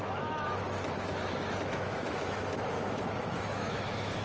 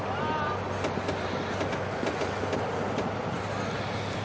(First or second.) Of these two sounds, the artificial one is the first